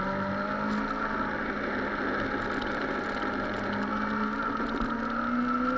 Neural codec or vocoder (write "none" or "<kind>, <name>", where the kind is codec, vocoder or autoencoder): none